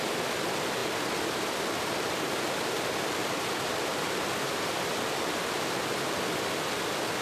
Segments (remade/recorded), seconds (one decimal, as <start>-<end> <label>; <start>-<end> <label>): 0.0-3.2 recorded; 3.2-6.6 remade; 6.6-7.2 recorded